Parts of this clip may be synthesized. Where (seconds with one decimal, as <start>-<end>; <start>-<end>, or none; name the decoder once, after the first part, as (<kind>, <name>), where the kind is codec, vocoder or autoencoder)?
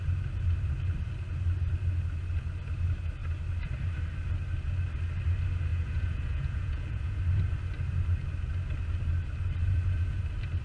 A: 5.7-7.2 (vocoder, Vocos); 9.6-10.2